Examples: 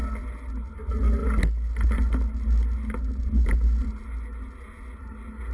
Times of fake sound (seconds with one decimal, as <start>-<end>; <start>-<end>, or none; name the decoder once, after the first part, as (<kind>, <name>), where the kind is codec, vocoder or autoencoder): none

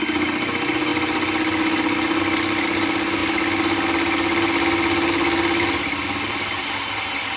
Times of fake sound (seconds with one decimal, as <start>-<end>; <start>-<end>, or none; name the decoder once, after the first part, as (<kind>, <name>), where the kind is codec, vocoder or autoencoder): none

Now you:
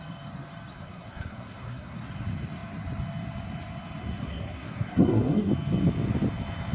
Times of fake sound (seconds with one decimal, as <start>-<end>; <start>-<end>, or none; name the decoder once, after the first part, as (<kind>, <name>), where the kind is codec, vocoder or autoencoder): 0.7-2.0 (codec, SNAC); 4.2-5.5

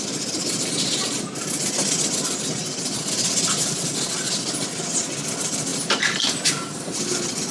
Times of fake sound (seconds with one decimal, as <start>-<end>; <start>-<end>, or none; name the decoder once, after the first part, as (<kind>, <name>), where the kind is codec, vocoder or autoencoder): none